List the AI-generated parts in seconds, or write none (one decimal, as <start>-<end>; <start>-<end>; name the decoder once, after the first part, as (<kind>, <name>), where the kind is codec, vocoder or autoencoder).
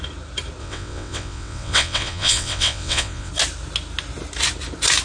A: 0.6-3.3 (vocoder, WaveNeXt)